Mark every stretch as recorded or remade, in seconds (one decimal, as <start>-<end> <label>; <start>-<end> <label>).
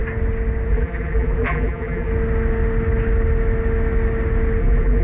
0.0-0.7 recorded; 0.7-2.1 remade; 2.1-4.6 recorded; 4.6-5.0 remade